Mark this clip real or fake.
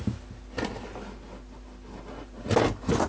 real